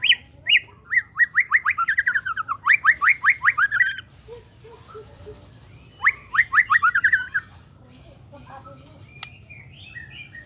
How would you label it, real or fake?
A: fake